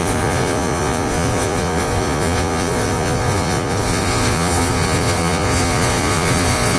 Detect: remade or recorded remade